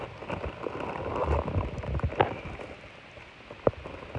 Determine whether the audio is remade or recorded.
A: recorded